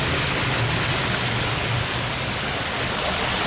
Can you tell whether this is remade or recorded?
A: recorded